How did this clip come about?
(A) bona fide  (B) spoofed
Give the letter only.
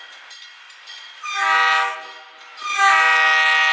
A